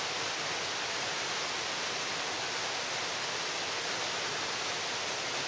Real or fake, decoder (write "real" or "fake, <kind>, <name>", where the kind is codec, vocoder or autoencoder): real